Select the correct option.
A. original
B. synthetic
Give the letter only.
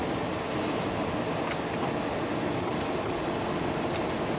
A